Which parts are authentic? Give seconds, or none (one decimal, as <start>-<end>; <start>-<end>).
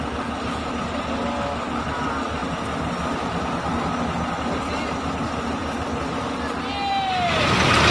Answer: 0.0-7.9